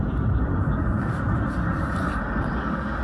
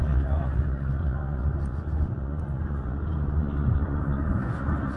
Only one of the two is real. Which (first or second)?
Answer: first